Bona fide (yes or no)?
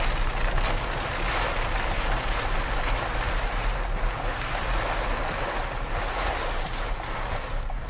yes